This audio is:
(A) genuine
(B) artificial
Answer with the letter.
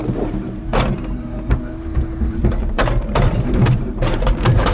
B